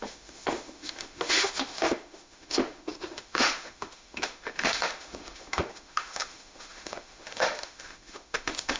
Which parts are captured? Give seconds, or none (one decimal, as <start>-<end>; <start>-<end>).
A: none